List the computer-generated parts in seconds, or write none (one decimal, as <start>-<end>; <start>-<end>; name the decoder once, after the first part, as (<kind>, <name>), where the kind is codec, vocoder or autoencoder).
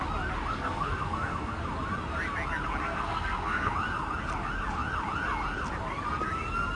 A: 0.5-1.6 (codec, SNAC); 2.8-3.7